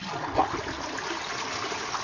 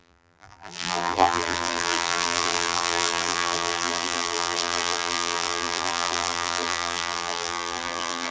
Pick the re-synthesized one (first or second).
second